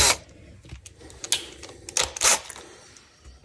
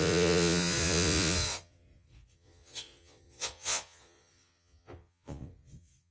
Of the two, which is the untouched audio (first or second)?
first